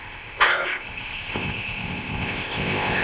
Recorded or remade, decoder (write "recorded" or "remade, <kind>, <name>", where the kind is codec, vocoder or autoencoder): remade, codec, ZipCodec